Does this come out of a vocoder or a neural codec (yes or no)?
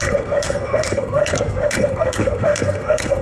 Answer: yes